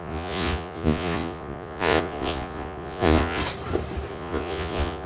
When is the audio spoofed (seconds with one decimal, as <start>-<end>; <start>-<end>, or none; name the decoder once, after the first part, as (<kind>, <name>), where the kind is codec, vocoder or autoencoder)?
0.0-3.4 (vocoder, Vocos); 4.1-5.1